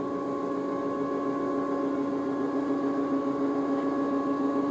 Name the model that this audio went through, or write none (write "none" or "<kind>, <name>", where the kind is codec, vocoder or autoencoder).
none